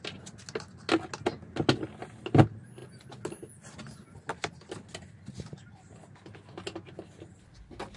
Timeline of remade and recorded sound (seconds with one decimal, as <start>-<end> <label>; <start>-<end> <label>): 0.0-8.0 recorded